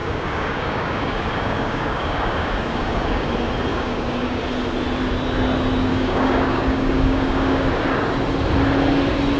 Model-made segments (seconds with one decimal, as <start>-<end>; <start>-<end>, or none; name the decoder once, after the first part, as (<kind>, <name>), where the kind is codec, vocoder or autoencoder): 0.0-3.3 (codec, DAC); 3.7-4.4; 5.9-7.7